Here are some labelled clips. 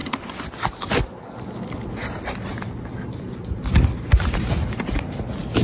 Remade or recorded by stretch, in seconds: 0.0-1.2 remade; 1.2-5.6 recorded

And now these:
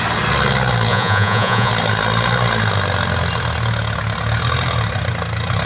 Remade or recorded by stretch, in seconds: 0.0-0.9 recorded; 0.9-1.7 remade; 1.7-5.7 recorded